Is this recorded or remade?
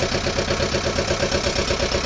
recorded